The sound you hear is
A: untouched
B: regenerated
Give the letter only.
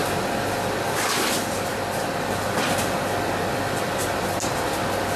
A